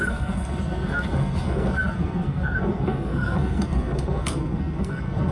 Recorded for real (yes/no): no